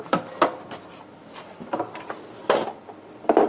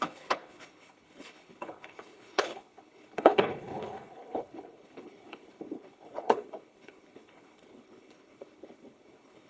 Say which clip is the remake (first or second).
second